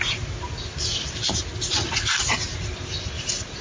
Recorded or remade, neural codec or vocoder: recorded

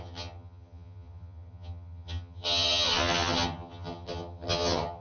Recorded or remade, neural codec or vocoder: remade, vocoder, HiFi-GAN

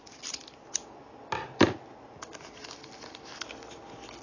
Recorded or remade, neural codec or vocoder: recorded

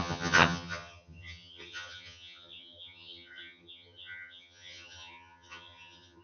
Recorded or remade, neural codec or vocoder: remade, vocoder, HiFi-GAN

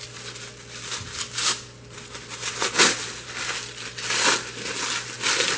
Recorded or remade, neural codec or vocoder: recorded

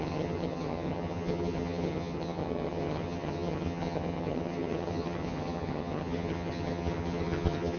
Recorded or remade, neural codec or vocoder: remade, vocoder, HiFi-GAN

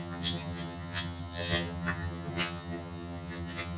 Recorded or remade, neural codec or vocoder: remade, vocoder, HiFi-GAN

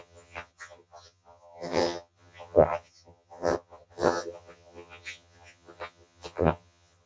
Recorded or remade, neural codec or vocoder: remade, vocoder, HiFi-GAN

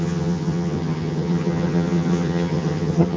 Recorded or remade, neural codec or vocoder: remade, vocoder, HiFi-GAN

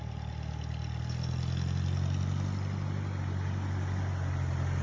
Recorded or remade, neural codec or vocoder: recorded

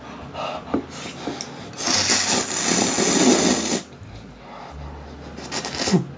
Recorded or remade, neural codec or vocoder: recorded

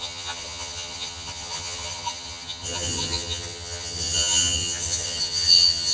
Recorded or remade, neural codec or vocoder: remade, vocoder, HiFi-GAN